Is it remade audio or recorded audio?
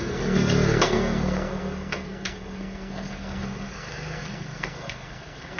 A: remade